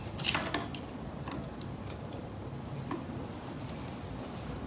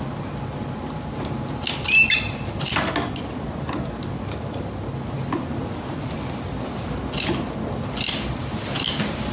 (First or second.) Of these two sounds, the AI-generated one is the first